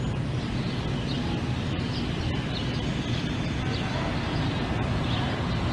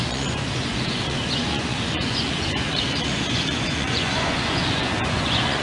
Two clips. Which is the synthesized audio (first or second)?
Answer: second